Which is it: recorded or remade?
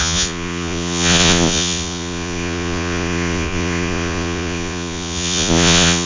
remade